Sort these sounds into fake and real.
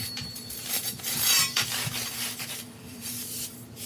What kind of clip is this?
fake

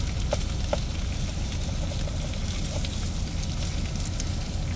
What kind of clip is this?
real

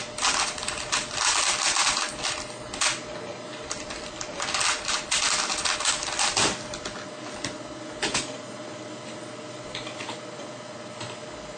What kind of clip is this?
real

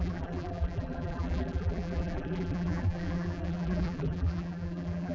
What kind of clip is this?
fake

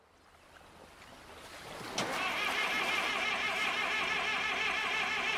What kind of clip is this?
real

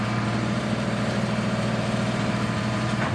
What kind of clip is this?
fake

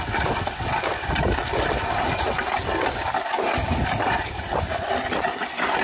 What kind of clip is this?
real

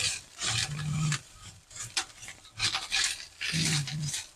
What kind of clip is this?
fake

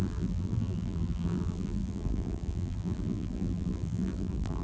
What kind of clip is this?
fake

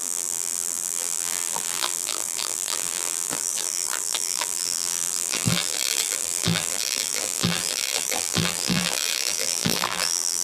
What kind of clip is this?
fake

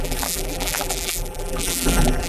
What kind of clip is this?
fake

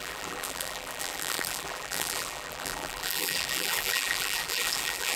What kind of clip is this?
fake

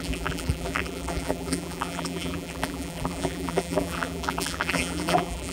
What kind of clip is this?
fake